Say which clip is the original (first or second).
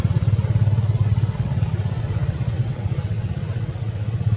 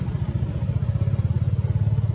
second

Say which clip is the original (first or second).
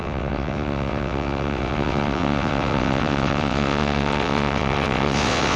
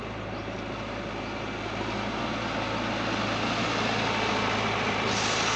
second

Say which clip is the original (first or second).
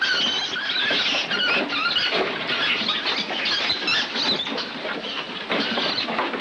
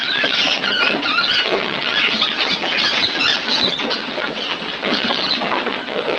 first